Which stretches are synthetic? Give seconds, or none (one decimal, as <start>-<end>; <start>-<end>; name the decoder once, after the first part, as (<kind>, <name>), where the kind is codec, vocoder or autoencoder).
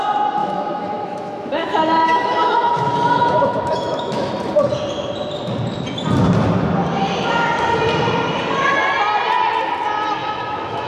0.4-4.3 (autoencoder, DAC-VAE); 10.2-10.9